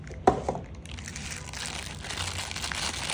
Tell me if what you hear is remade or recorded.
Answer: recorded